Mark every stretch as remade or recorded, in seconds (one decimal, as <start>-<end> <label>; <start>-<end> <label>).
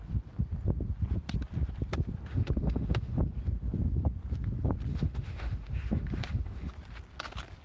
0.0-2.3 recorded; 2.3-3.2 remade; 3.2-4.9 recorded; 4.9-6.7 remade; 6.7-7.6 recorded